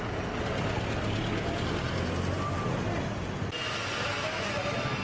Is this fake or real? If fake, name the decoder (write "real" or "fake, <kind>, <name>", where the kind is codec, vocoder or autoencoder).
real